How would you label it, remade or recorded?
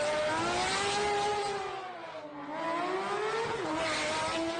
recorded